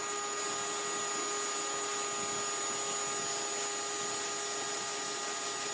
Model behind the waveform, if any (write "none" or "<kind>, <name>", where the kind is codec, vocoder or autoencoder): none